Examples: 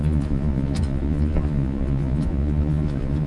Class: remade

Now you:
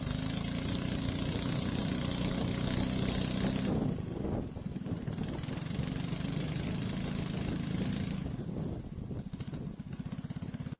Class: recorded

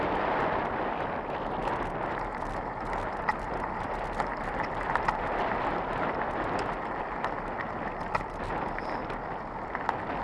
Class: recorded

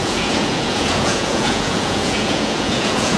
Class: remade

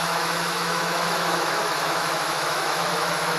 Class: remade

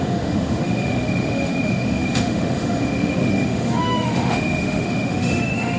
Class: remade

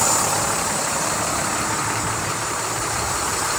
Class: remade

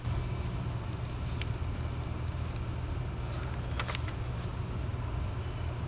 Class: recorded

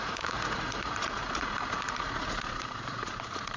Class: remade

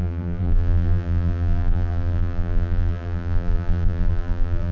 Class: remade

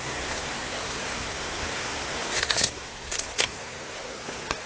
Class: remade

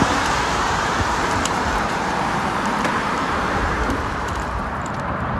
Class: remade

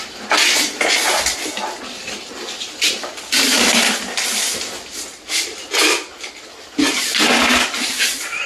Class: recorded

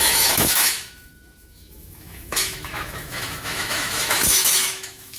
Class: remade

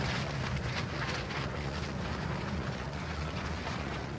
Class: remade